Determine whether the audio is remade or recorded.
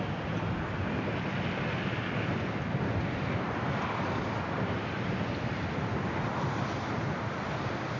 recorded